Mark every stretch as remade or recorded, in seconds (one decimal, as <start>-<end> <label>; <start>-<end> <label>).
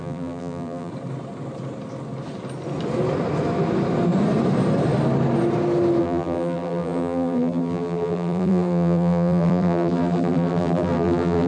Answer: 0.0-0.9 remade; 0.9-6.0 recorded; 6.0-11.5 remade